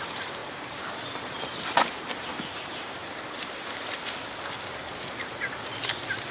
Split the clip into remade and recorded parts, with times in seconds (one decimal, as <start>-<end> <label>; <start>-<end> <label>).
0.0-0.4 recorded; 0.4-4.1 remade; 4.1-4.8 recorded; 4.8-5.5 remade; 5.5-6.3 recorded